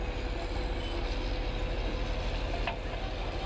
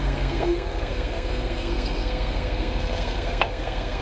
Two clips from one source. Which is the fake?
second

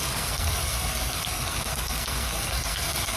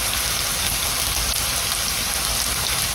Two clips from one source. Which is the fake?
first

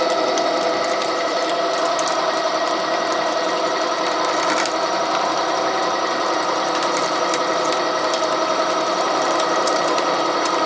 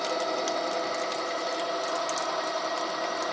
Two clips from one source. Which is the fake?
first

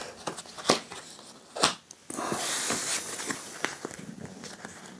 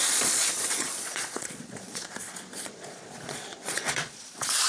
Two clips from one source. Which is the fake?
second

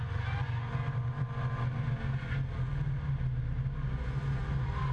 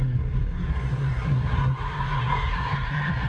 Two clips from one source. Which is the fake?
second